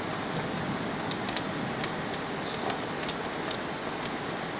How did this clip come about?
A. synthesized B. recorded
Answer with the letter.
B